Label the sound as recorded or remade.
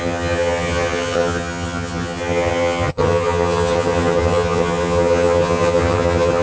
remade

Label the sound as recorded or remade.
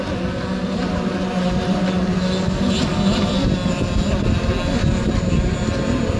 recorded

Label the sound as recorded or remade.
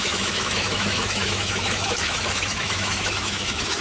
remade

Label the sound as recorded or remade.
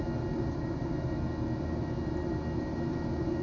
recorded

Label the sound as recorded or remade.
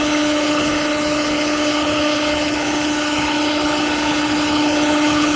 remade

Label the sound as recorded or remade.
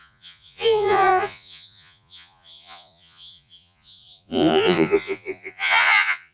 remade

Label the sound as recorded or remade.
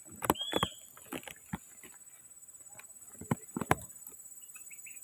recorded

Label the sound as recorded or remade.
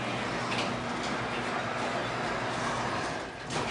recorded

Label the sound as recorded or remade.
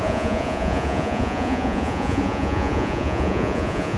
remade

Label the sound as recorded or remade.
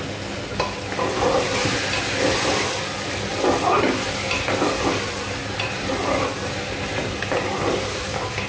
recorded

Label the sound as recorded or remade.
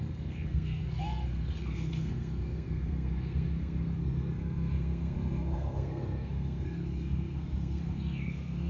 remade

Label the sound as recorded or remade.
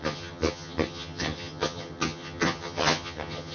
remade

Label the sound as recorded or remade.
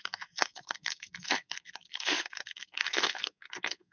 remade